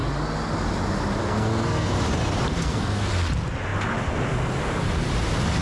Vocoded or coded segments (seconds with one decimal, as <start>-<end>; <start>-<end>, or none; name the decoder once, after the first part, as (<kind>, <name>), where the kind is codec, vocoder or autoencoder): 1.2-1.9 (codec, SNAC); 2.5-3.1